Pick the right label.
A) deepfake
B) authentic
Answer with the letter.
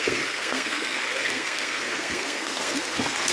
A